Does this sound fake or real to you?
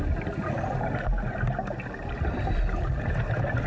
real